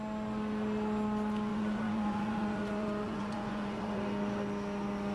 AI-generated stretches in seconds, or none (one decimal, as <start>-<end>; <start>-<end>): 1.5-4.0